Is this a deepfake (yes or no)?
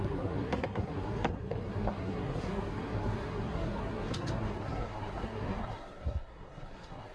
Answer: yes